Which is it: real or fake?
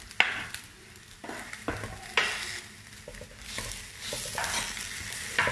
real